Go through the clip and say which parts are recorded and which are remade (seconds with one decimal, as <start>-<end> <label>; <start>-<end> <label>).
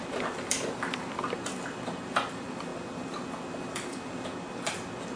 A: 0.0-5.2 recorded